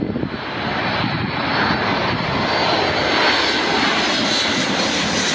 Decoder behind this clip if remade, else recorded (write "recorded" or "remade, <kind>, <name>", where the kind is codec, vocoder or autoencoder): recorded